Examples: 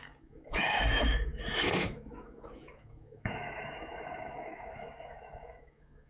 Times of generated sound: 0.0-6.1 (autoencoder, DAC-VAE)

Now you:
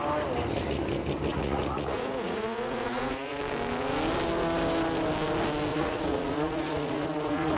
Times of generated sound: 1.3-3.4 (vocoder, Vocos); 5.7-7.6

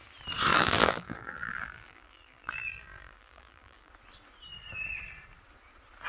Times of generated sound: 0.5-3.9 (vocoder, BigVGAN v2)

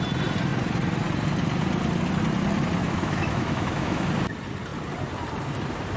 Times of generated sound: 2.8-4.1 (autoencoder, DAC-VAE)

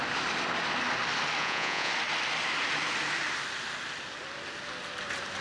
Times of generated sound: 1.4-1.9 (vocoder, Vocos)

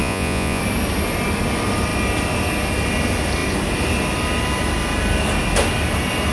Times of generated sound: 0.0-0.6 (vocoder, Vocos)